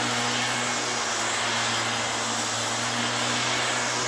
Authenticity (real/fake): real